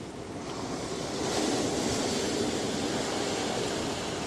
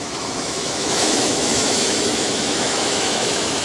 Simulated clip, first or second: second